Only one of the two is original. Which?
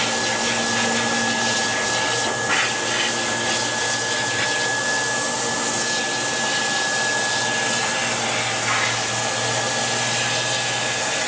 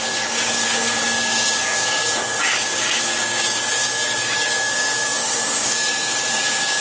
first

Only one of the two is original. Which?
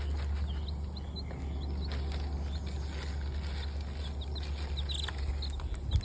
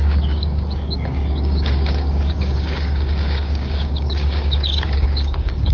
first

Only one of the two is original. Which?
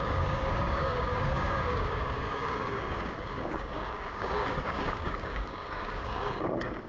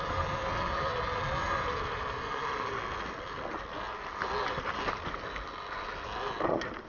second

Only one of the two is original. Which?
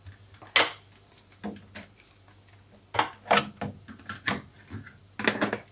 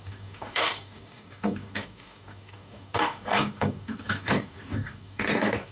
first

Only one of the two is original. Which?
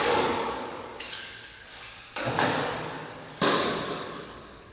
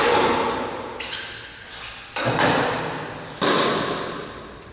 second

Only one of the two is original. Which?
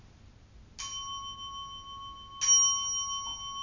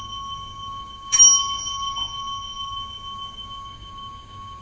first